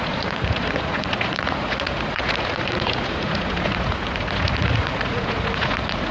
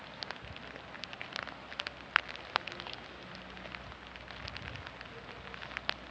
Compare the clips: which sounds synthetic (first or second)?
first